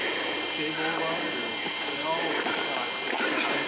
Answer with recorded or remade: recorded